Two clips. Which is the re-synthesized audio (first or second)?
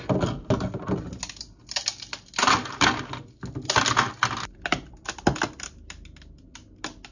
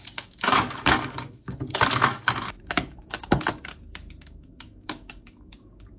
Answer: second